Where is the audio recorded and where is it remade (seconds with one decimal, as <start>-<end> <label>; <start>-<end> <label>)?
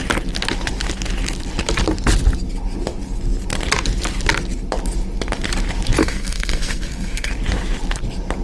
0.0-6.0 recorded; 6.0-7.3 remade; 7.3-8.4 recorded